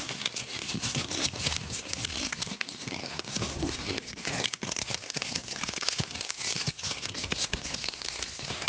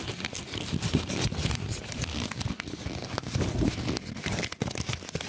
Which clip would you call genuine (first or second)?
second